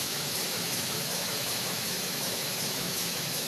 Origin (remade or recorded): remade